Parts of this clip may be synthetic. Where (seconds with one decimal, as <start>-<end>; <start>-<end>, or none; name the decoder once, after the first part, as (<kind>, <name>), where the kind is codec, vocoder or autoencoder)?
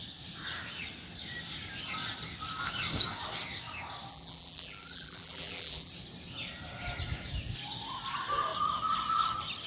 4.1-5.9 (vocoder, BigVGAN v2)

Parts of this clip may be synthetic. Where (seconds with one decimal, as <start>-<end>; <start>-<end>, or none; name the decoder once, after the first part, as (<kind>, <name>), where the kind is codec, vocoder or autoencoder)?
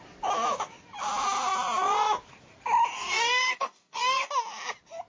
2.9-4.3 (codec, DAC)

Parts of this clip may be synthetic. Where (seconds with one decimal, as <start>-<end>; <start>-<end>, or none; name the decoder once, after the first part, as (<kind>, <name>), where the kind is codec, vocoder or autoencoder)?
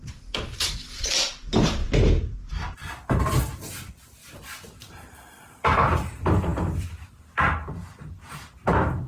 none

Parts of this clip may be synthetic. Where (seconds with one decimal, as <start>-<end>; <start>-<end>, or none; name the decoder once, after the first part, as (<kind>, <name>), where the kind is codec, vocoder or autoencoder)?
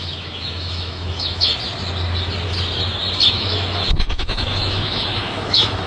0.0-1.5 (autoencoder, DAC-VAE); 3.3-5.9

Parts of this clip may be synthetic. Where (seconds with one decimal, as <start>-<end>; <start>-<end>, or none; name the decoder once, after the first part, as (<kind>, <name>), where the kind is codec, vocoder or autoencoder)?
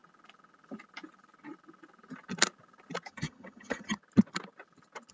3.1-4.0 (vocoder, HiFi-GAN)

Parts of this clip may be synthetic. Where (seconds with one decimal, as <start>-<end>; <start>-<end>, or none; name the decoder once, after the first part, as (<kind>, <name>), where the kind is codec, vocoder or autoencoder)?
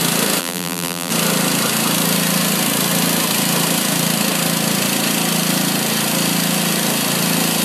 0.4-1.1 (vocoder, BigVGAN v2)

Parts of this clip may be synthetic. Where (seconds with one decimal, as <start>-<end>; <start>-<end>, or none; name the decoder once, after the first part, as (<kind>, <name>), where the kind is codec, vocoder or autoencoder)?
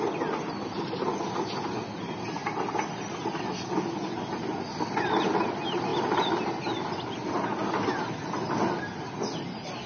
none